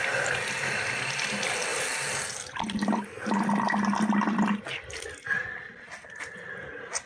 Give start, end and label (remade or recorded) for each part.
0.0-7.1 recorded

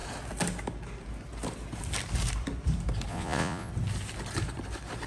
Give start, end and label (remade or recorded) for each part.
0.0-3.1 recorded; 3.1-3.7 remade; 3.7-5.1 recorded

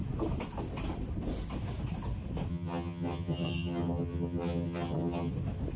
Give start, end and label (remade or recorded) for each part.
0.0-2.5 recorded; 2.5-5.3 remade; 5.3-5.8 recorded

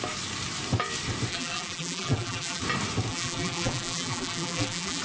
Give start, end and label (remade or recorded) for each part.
0.0-1.3 recorded; 1.3-2.6 remade; 2.6-3.1 recorded; 3.1-5.0 remade

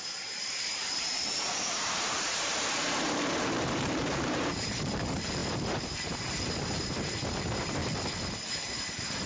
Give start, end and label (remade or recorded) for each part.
0.0-7.8 remade; 7.8-8.7 recorded; 8.7-9.3 remade

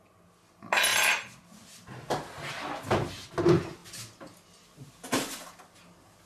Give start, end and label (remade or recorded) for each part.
0.0-6.3 recorded

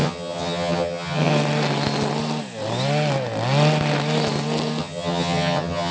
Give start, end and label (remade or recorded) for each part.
0.0-1.3 remade; 1.3-4.8 recorded; 4.8-5.9 remade

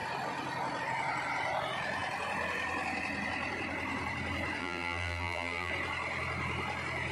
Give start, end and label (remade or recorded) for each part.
0.0-4.6 recorded; 4.6-5.7 remade; 5.7-7.1 recorded